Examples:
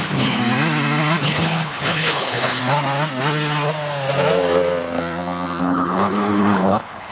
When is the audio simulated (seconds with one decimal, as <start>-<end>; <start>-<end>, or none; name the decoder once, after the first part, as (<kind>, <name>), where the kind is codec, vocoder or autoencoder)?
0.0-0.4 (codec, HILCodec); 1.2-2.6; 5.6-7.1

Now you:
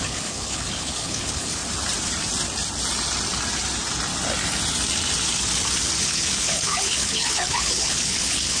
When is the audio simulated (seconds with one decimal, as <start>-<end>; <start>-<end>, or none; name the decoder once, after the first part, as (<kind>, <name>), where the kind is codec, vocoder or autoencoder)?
0.0-1.6 (codec, HILCodec); 6.0-8.6

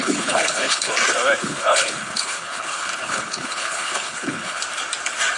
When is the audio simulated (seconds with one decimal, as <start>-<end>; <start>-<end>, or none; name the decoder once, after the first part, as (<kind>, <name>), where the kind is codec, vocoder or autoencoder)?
0.0-0.9 (codec, HILCodec); 1.4-4.6

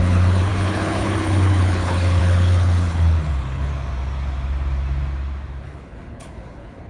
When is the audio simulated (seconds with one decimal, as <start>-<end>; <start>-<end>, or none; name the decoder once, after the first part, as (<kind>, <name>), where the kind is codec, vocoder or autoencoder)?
0.0-3.7 (codec, HILCodec); 5.6-6.9

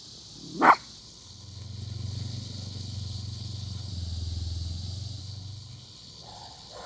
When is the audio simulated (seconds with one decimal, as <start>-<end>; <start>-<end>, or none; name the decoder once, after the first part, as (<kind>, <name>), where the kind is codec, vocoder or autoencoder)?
1.0-3.9 (codec, HILCodec); 5.2-6.9